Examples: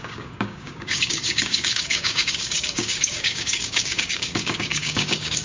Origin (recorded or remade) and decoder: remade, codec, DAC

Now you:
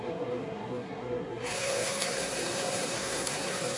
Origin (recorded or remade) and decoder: remade, codec, SNAC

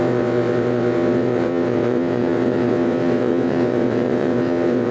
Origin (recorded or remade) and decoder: remade, vocoder, WaveNeXt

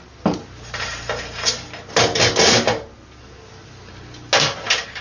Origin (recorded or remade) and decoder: recorded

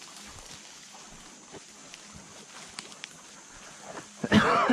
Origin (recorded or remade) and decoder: recorded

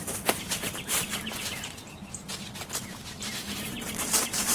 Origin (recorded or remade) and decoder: remade, vocoder, BigVGAN v2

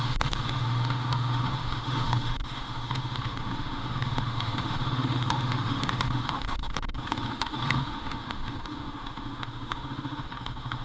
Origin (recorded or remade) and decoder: remade, autoencoder, DAC-VAE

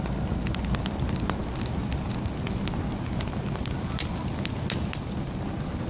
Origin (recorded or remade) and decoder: recorded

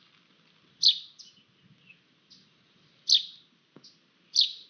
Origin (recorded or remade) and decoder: recorded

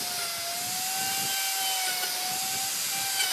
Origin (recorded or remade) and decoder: recorded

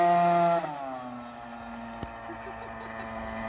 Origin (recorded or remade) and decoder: recorded